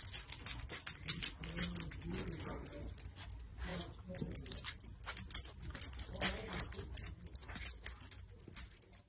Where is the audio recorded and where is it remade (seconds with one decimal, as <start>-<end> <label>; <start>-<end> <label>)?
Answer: 0.0-9.1 recorded